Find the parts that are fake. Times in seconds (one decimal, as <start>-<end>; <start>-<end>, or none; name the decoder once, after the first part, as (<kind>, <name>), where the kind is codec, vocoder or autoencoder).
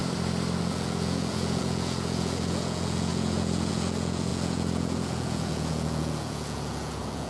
0.6-7.3 (vocoder, Vocos)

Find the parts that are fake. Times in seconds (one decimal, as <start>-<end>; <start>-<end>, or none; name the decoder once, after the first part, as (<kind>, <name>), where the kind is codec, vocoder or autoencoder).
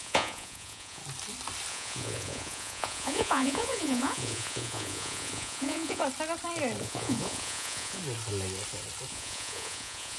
0.0-1.0 (vocoder, Vocos); 1.7-6.0; 6.8-8.0; 9.1-10.2